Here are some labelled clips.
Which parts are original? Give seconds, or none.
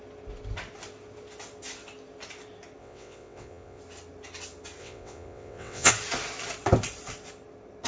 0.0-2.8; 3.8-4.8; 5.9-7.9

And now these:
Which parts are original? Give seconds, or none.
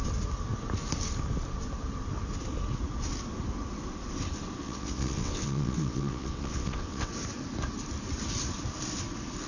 0.0-4.6; 7.1-9.5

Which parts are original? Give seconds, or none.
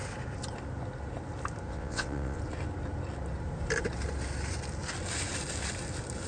0.0-1.7; 2.4-6.3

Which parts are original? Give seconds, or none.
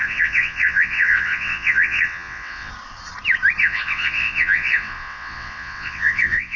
2.7-3.6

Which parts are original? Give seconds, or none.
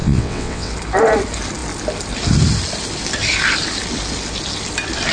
0.7-5.1